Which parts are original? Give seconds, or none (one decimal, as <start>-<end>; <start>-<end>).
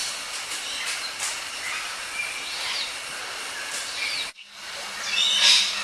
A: 0.0-5.8